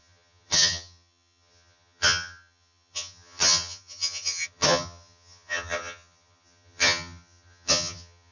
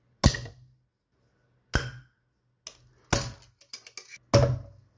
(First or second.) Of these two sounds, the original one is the second